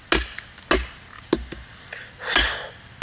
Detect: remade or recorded recorded